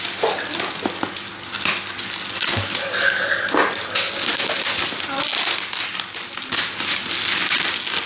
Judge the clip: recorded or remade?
recorded